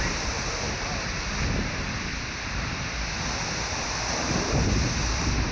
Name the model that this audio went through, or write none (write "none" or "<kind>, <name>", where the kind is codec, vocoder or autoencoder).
none